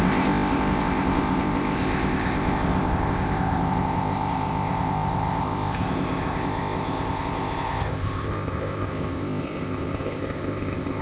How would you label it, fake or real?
fake